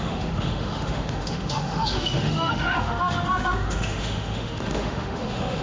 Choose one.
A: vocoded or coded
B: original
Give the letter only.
A